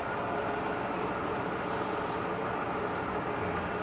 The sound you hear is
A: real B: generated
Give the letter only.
A